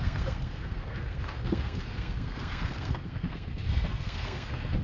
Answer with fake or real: fake